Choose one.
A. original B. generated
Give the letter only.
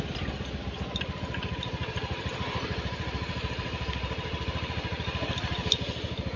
A